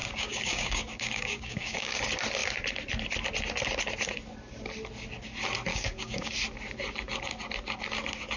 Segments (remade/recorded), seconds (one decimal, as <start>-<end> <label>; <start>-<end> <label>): 0.0-2.0 remade; 2.0-5.7 recorded; 5.7-6.3 remade; 6.3-8.4 recorded